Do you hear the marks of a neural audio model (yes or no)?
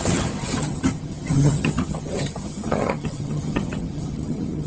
yes